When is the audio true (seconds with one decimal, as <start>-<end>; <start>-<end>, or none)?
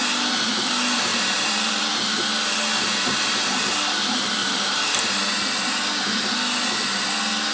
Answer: 0.0-1.1; 1.9-4.4; 5.0-7.5